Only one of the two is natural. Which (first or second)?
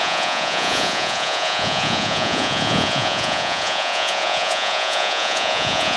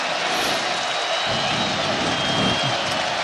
second